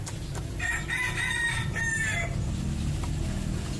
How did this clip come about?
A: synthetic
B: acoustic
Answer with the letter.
B